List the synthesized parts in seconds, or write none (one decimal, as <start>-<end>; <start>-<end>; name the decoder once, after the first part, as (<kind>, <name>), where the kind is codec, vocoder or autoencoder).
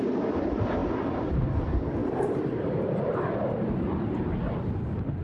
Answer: 2.0-3.1 (vocoder, BigVGAN v2)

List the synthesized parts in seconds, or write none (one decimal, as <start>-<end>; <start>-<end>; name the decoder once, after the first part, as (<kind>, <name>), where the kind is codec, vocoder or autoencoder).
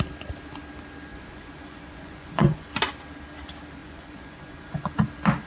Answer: 1.1-2.7 (vocoder, Vocos); 3.8-4.9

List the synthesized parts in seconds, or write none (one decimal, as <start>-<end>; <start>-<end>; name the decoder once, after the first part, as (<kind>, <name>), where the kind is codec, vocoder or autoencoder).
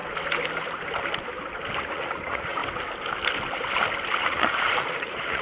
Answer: 1.8-2.6 (vocoder, Vocos); 4.2-5.4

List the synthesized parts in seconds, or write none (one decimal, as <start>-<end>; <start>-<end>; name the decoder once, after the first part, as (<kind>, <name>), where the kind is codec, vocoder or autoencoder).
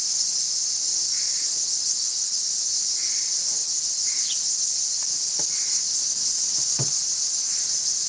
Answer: 3.6-5.8 (vocoder, BigVGAN v2); 6.2-6.8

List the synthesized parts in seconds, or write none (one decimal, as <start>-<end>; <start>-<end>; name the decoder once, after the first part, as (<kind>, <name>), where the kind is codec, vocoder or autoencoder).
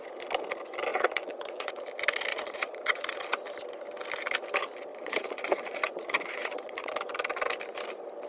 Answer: 0.9-1.8 (vocoder, Vocos); 2.3-3.2; 4.9-6.9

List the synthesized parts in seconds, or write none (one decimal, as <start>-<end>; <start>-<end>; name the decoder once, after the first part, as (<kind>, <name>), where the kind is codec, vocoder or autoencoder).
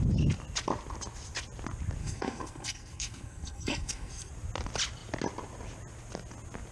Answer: 2.0-4.3 (codec, SNAC)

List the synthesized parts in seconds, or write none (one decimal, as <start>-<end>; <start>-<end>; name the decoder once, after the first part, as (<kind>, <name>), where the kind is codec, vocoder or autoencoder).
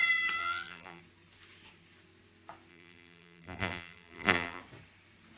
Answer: 0.4-1.0 (vocoder, BigVGAN v2); 2.7-4.6